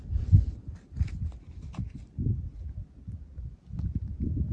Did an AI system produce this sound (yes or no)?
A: no